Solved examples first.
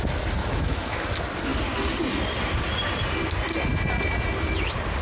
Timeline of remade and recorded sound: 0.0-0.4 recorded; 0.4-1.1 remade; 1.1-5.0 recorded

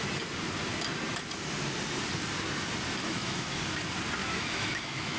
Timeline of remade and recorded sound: 0.0-3.0 recorded; 3.0-3.6 remade; 3.6-4.2 recorded; 4.2-5.2 remade

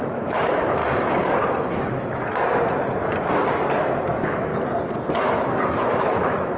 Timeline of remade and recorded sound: 0.0-0.8 remade; 0.8-1.6 recorded; 1.6-2.4 remade; 2.4-3.8 recorded; 3.8-4.5 remade; 4.5-5.4 recorded; 5.4-6.6 remade

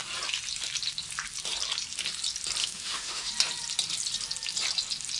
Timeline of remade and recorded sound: 0.0-2.6 recorded; 2.6-3.3 remade; 3.3-5.2 recorded

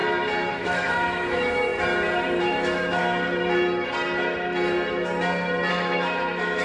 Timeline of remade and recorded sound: 0.0-0.5 recorded; 0.5-1.7 remade; 1.7-2.4 recorded; 2.4-3.0 remade; 3.0-5.7 recorded; 5.7-6.6 remade

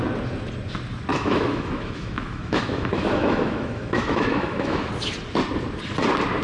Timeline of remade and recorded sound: 0.0-1.1 recorded; 1.1-4.9 remade; 4.9-6.4 recorded

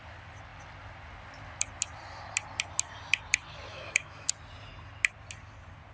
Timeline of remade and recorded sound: 0.0-3.7 recorded; 3.7-4.3 remade; 4.3-5.9 recorded

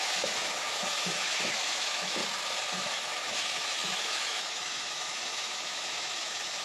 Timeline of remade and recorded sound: 0.0-2.2 remade; 2.2-2.8 recorded; 2.8-6.6 remade